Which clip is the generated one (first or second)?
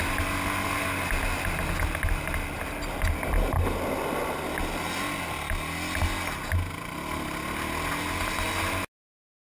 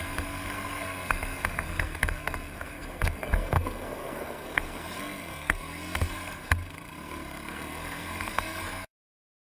second